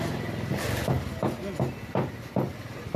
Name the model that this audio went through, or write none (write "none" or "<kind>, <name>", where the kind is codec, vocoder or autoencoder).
none